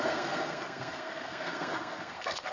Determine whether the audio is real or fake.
fake